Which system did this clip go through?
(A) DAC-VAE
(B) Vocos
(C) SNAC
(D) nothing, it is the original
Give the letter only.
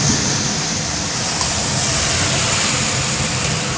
D